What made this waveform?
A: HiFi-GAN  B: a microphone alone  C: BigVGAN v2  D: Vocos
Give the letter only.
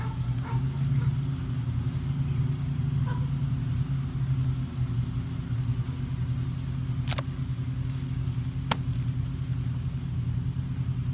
B